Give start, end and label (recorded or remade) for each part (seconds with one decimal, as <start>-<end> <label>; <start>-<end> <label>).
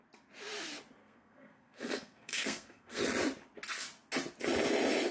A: 0.0-1.0 recorded; 1.0-3.0 remade; 3.0-5.1 recorded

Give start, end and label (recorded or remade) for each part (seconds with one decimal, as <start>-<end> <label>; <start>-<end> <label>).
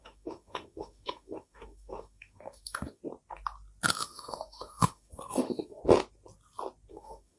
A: 0.0-3.0 remade; 3.0-3.9 recorded; 3.9-5.8 remade; 5.8-6.9 recorded; 6.9-7.4 remade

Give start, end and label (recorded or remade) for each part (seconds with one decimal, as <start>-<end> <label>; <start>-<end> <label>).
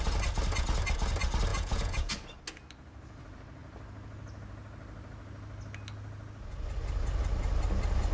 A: 0.0-1.5 recorded; 1.5-2.1 remade; 2.1-8.1 recorded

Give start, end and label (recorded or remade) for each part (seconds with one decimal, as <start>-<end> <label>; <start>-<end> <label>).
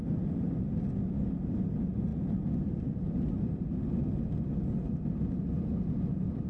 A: 0.0-6.5 recorded